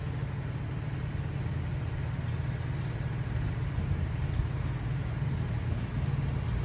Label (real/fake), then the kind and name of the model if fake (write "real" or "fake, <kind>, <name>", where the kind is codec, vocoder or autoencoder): real